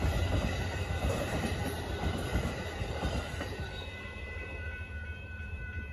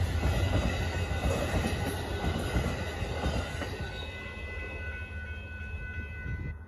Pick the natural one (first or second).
second